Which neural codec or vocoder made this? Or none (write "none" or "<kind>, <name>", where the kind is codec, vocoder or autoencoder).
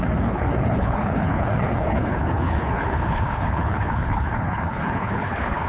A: codec, HILCodec